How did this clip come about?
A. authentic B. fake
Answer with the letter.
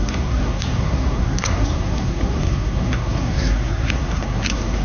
B